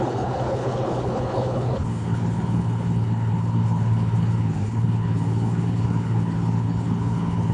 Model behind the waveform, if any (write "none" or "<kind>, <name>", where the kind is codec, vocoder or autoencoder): codec, HILCodec